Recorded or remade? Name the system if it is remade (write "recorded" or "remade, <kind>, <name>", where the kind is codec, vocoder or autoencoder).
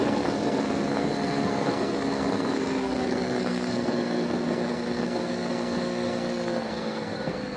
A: remade, codec, SNAC